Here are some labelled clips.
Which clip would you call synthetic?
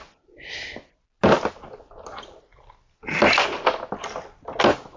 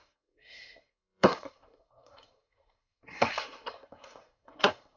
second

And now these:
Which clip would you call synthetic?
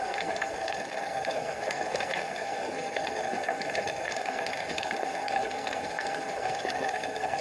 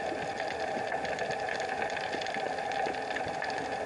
first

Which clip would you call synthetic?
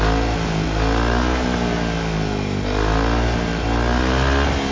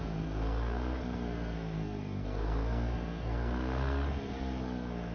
second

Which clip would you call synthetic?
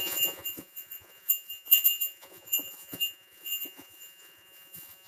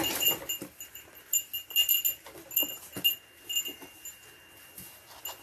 first